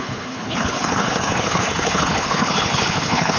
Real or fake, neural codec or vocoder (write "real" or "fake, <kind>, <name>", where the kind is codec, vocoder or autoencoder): fake, codec, HILCodec